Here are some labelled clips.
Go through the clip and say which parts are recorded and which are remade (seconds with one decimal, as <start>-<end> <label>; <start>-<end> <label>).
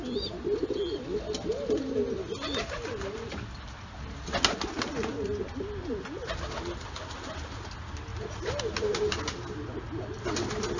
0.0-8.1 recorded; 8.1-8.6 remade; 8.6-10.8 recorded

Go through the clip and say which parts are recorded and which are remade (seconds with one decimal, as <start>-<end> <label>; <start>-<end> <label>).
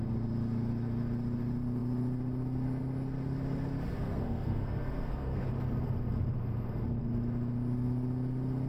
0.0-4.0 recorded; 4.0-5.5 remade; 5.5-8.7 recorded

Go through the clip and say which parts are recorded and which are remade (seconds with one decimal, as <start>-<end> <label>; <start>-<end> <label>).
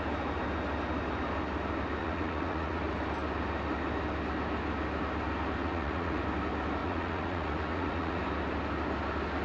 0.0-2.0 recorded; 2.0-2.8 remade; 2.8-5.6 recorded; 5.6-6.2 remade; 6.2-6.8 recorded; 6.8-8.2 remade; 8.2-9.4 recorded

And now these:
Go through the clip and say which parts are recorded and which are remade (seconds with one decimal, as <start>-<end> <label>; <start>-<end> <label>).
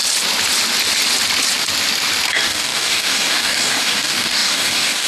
0.0-2.3 recorded; 2.3-5.1 remade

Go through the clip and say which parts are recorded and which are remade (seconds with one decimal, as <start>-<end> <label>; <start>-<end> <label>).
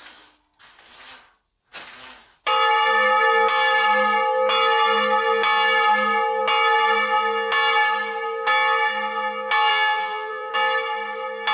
0.0-9.7 recorded; 9.7-10.5 remade; 10.5-11.5 recorded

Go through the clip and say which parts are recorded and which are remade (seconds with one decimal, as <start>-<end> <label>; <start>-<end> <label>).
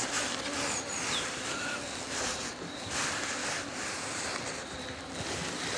0.0-5.8 recorded